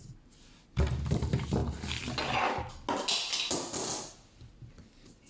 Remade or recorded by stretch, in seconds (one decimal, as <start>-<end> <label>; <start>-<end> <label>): 0.0-5.3 recorded